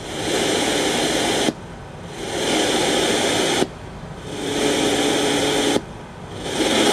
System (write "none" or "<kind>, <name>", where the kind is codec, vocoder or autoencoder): none